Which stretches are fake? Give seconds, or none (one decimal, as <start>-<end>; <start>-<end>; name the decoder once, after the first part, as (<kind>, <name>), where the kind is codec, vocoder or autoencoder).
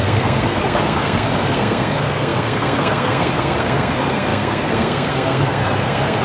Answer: 0.0-6.2 (codec, SNAC)